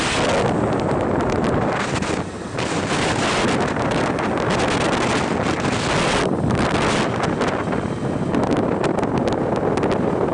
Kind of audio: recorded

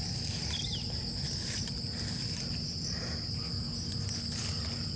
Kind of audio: recorded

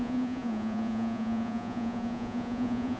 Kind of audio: remade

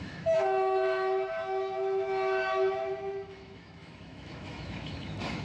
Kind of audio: remade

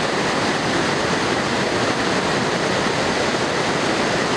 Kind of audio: recorded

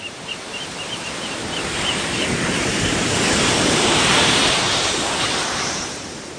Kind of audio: remade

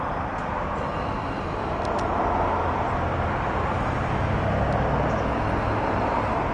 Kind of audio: recorded